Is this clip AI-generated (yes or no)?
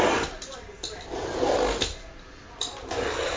no